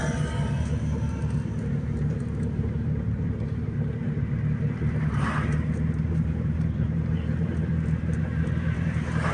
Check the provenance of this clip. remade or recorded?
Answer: remade